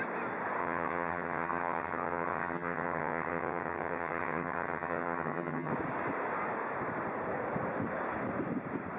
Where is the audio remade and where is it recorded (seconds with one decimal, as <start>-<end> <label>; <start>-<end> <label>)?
0.0-0.6 recorded; 0.6-5.7 remade; 5.7-9.0 recorded